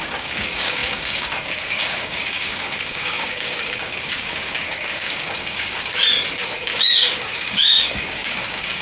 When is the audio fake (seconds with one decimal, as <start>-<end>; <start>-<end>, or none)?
0.0-6.0; 6.6-8.8